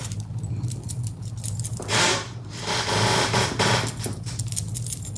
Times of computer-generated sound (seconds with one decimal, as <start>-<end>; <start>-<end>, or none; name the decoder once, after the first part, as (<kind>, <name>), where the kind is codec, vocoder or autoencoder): 0.0-1.3 (vocoder, BigVGAN v2)